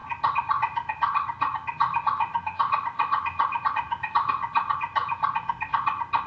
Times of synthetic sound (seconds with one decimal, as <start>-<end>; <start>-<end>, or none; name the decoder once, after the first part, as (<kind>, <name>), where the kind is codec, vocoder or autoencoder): none